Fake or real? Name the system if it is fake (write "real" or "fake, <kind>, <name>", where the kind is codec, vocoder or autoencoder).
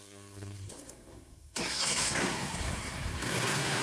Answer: fake, codec, SNAC